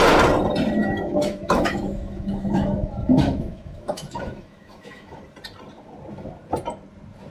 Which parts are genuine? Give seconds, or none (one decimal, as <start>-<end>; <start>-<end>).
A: 0.0-0.8; 5.2-7.3

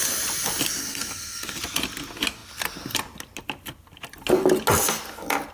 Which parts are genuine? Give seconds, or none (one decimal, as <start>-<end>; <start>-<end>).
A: 0.0-0.8; 1.6-5.5

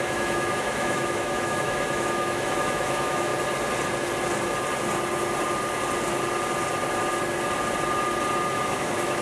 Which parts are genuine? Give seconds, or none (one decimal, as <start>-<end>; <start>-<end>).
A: 3.3-8.5